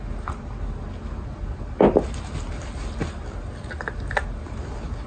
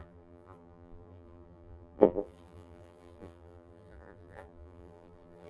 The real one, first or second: first